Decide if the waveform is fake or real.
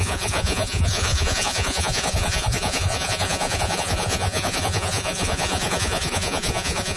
fake